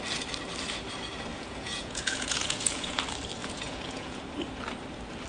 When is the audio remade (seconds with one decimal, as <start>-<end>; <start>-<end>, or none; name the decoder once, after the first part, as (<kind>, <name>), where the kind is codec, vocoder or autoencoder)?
1.3-3.0 (vocoder, Vocos); 3.4-4.2

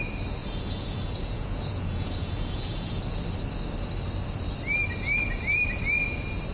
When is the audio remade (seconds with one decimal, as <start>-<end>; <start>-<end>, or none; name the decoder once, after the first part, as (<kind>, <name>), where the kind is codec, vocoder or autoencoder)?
0.4-3.0 (vocoder, Vocos)

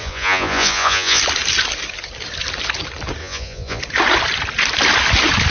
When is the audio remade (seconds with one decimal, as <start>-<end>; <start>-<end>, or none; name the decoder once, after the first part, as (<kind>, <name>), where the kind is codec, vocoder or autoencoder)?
0.0-1.2 (vocoder, Vocos); 3.2-3.8

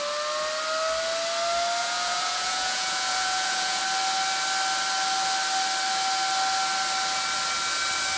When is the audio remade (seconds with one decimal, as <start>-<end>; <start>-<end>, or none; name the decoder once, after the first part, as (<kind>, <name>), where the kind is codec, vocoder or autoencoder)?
1.8-3.8 (vocoder, Vocos)

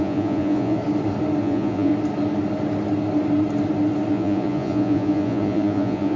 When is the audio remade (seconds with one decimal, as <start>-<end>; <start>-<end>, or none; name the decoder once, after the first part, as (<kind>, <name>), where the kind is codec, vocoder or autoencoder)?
0.0-0.8 (vocoder, Vocos); 1.4-1.9; 4.1-6.2

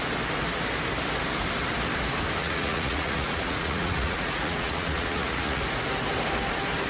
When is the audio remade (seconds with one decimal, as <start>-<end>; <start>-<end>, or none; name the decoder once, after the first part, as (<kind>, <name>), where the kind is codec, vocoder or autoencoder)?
2.4-5.6 (vocoder, Vocos)

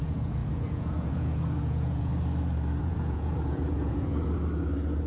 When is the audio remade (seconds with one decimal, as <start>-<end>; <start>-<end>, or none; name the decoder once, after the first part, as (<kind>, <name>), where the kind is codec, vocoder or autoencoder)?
0.0-2.1 (vocoder, Vocos); 2.8-4.1

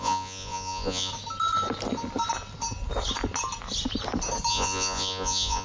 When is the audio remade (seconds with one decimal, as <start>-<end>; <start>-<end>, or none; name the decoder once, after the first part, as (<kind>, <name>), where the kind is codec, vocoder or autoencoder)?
0.0-1.1 (vocoder, Vocos); 4.5-5.6